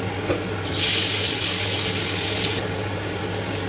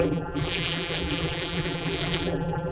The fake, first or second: second